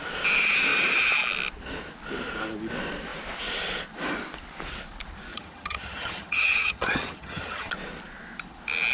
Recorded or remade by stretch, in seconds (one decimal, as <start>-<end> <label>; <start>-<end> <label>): 0.0-5.3 recorded; 5.3-7.7 remade; 7.7-8.9 recorded